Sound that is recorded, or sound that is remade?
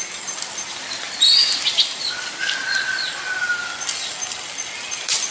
recorded